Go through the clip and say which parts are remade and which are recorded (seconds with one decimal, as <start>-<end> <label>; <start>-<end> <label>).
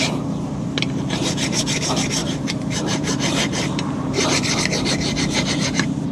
0.0-6.1 remade